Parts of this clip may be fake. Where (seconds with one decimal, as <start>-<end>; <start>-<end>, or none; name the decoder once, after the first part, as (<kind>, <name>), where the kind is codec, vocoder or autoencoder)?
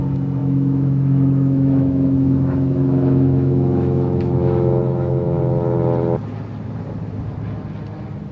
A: 0.4-5.4 (autoencoder, DAC-VAE)